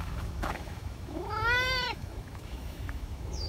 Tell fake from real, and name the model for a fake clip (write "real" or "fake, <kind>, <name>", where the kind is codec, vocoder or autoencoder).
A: fake, autoencoder, DAC-VAE